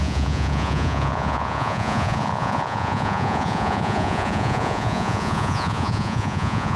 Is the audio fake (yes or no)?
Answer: yes